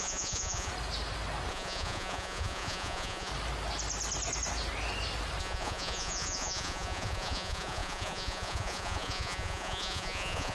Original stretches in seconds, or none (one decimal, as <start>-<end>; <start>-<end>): 0.7-1.5; 3.3-5.4